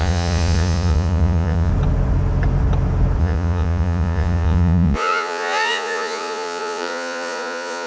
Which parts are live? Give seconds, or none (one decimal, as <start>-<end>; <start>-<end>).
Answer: 1.7-3.2